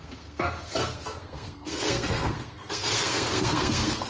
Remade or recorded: remade